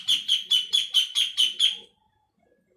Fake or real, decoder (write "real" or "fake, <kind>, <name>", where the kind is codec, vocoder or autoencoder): real